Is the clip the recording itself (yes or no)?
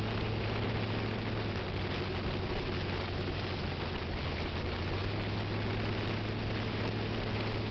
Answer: yes